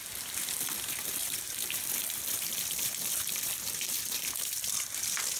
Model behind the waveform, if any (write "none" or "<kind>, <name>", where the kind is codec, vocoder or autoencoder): vocoder, BigVGAN v2